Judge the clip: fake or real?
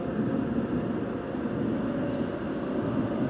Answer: real